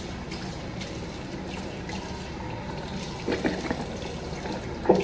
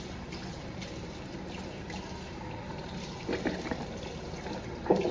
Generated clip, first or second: second